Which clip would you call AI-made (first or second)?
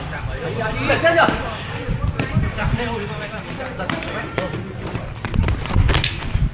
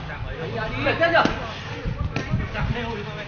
first